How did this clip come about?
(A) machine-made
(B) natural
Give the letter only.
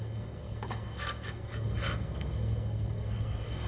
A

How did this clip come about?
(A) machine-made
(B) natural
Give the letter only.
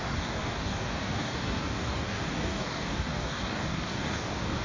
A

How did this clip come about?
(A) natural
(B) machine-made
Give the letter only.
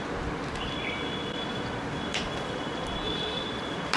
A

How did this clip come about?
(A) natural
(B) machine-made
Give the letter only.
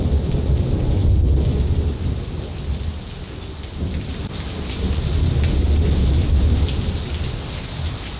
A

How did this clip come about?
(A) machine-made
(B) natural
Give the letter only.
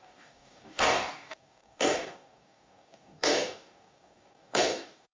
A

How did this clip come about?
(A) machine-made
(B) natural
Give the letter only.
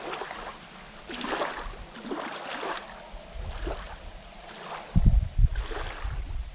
B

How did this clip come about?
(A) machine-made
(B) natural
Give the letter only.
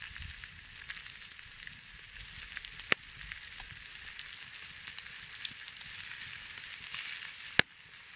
B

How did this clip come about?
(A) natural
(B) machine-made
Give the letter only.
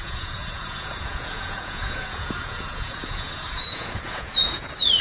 B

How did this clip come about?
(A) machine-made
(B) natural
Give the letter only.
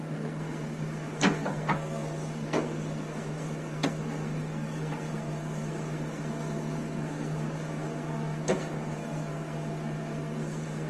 A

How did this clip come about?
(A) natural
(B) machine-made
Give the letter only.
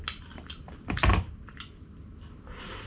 A